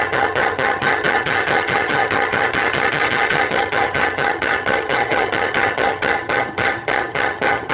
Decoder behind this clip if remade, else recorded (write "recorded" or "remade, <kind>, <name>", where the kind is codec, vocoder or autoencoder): remade, vocoder, HiFi-GAN